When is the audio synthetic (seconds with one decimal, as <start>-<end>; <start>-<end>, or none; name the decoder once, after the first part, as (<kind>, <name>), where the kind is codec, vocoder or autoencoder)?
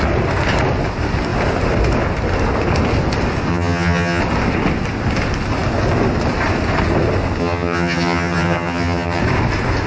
3.5-4.2 (vocoder, HiFi-GAN); 7.4-9.2